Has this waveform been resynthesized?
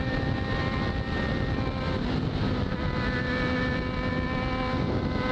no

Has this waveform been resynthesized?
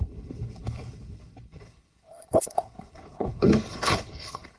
yes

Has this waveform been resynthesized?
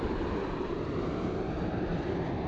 no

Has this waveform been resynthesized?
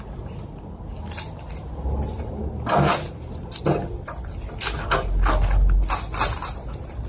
no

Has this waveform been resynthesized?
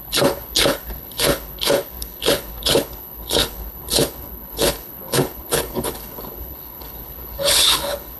yes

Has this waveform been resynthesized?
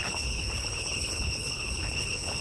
yes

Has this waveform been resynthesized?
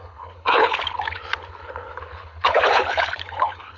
yes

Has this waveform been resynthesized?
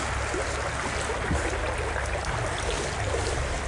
no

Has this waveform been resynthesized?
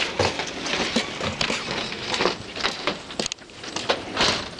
no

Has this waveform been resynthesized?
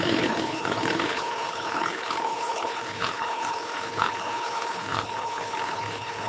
yes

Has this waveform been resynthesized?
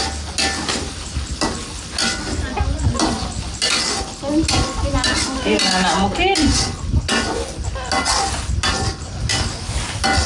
no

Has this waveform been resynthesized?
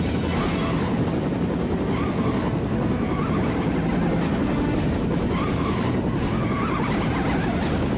no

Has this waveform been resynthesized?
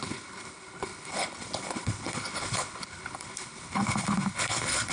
yes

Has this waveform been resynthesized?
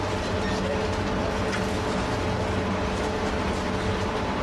no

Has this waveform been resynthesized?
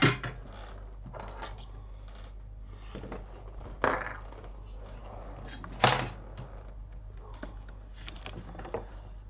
no